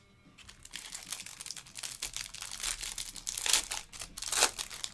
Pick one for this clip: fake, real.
real